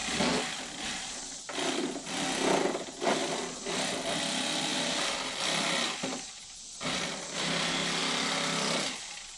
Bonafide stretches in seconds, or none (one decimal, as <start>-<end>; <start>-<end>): 0.0-9.4